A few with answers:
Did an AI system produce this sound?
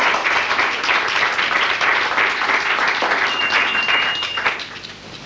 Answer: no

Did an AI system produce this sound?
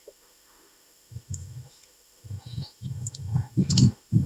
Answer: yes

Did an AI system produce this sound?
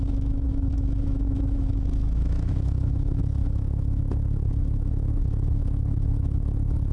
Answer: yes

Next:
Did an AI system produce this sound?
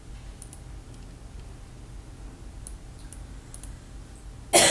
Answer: no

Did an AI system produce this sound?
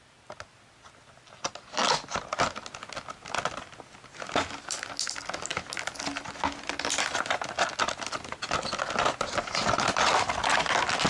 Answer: no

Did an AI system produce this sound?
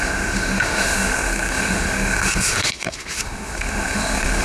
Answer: yes